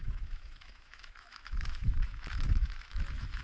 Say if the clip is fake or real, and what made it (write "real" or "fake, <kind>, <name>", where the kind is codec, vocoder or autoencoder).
fake, autoencoder, DAC-VAE